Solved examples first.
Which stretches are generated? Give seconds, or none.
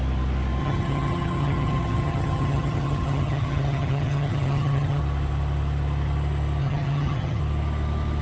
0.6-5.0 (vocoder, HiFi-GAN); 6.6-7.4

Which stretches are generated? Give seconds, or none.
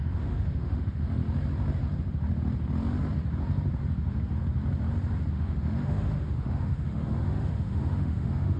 0.0-1.2 (autoencoder, DAC-VAE); 5.3-8.6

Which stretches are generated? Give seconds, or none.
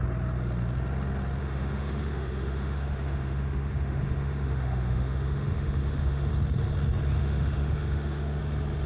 1.4-6.3 (autoencoder, DAC-VAE); 7.2-8.4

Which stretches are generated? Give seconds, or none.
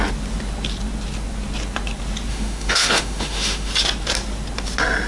2.3-3.7 (autoencoder, DAC-VAE)